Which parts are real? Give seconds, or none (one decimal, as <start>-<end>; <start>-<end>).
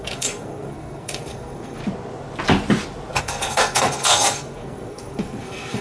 1.8-3.2